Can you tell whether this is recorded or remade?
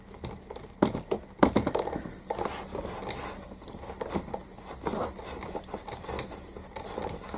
recorded